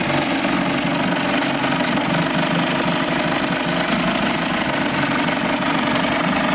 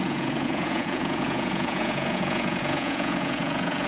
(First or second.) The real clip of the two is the first